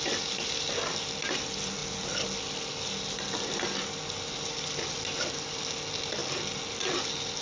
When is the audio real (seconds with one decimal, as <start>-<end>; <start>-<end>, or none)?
0.0-7.4